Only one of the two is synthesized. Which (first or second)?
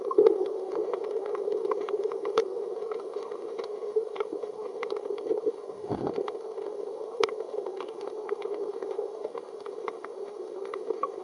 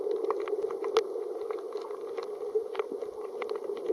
first